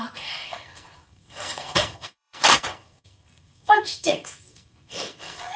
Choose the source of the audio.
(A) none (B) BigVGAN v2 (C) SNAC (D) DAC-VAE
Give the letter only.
C